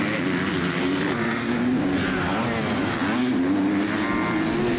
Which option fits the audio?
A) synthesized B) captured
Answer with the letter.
B